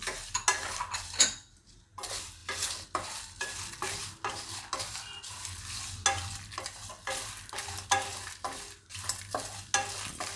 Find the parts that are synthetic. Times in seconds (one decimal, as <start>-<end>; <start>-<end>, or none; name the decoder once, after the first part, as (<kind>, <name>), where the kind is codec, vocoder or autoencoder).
none